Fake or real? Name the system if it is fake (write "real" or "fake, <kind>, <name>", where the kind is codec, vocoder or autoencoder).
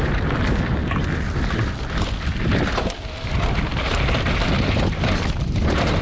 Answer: real